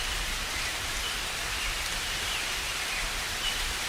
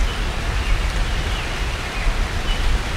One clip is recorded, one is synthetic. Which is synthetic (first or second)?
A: first